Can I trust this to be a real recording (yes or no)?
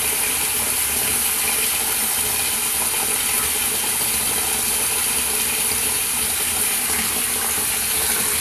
yes